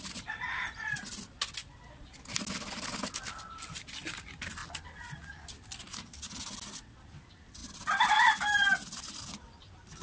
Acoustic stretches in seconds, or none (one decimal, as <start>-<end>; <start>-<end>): 0.0-10.0